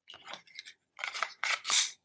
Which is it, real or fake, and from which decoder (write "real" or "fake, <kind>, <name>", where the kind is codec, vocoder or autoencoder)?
fake, vocoder, Vocos